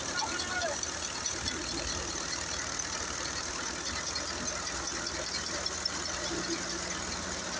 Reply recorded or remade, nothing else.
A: recorded